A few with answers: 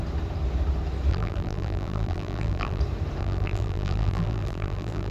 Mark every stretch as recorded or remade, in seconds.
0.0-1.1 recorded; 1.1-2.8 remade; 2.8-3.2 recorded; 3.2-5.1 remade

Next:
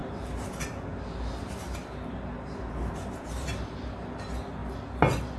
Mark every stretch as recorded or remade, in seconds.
0.0-0.6 remade; 0.6-1.8 recorded; 1.8-3.6 remade; 3.6-5.4 recorded

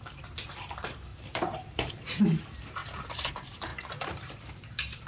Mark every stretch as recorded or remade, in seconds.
0.0-5.1 remade

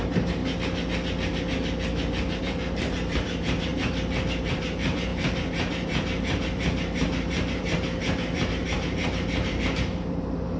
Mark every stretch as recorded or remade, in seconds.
0.0-0.4 remade; 0.4-2.4 recorded; 2.4-3.7 remade; 3.7-4.5 recorded; 4.5-10.6 remade

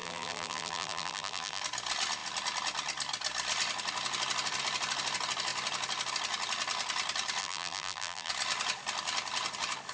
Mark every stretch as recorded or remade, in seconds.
0.0-1.6 remade; 1.6-7.4 recorded; 7.4-8.3 remade; 8.3-9.9 recorded